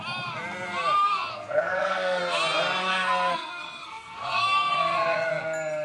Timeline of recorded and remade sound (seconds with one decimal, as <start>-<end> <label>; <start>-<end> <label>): 0.0-1.3 recorded; 1.3-2.2 remade; 2.2-2.8 recorded; 2.8-5.3 remade; 5.3-5.8 recorded